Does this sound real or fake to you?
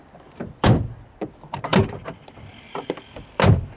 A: fake